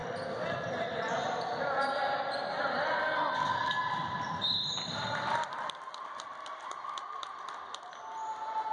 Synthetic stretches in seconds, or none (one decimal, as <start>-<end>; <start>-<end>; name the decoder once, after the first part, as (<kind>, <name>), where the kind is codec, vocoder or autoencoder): none